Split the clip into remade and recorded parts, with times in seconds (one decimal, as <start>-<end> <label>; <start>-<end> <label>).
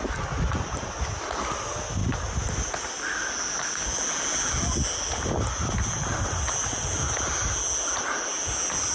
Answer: 0.0-2.0 recorded; 2.0-2.5 remade; 2.5-8.9 recorded